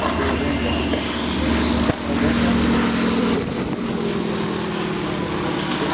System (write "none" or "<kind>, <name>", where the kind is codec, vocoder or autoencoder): none